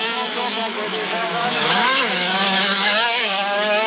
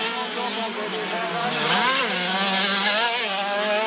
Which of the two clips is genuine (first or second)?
second